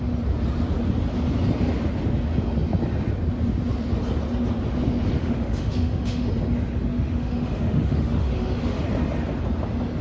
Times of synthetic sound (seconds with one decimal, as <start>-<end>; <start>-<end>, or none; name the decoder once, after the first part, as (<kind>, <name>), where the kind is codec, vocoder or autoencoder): 5.2-6.3 (autoencoder, DAC-VAE); 6.9-8.8